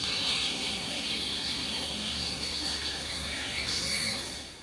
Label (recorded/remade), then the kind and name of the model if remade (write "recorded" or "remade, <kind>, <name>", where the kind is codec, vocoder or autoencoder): remade, codec, SNAC